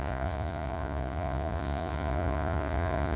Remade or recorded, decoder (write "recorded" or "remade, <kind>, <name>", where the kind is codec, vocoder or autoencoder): remade, vocoder, Vocos